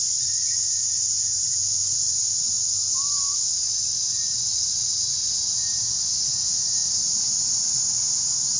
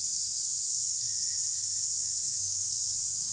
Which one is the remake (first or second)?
second